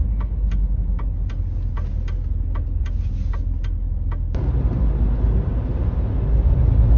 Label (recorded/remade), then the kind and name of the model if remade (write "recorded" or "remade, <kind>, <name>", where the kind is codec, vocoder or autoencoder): recorded